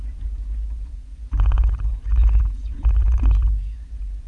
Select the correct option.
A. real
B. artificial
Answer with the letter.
B